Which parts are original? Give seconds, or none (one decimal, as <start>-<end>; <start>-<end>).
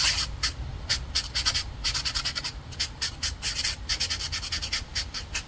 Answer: 0.0-5.5